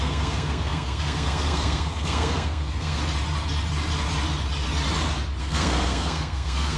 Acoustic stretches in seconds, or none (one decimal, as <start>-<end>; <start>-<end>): 3.0-5.4